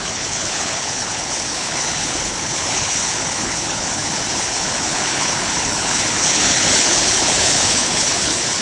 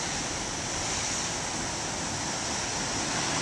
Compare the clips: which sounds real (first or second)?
second